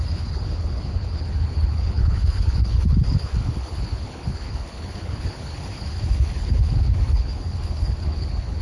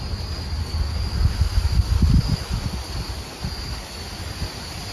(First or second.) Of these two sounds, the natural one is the second